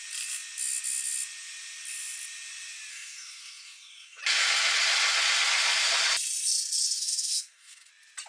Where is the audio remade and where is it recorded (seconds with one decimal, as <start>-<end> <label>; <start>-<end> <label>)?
0.0-2.9 recorded; 2.9-4.2 remade; 4.2-7.0 recorded; 7.0-7.9 remade; 7.9-8.3 recorded